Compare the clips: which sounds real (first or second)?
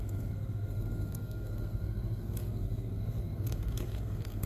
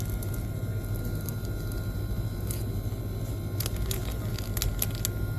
second